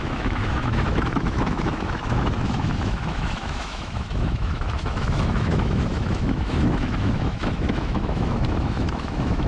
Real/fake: fake